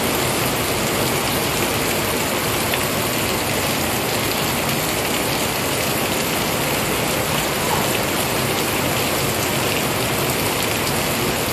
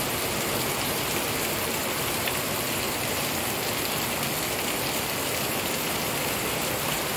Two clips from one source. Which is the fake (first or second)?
second